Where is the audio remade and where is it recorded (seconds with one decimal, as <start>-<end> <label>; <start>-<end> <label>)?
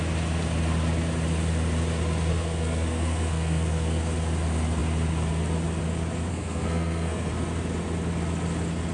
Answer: 0.0-2.3 recorded; 2.3-4.0 remade; 4.0-6.3 recorded; 6.3-7.3 remade; 7.3-8.9 recorded